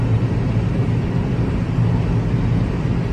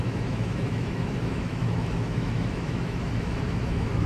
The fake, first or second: second